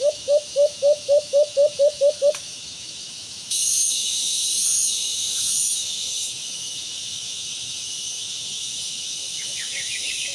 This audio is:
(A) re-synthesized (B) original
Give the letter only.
A